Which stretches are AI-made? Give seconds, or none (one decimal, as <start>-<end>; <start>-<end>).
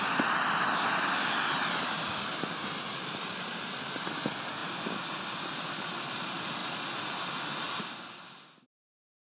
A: none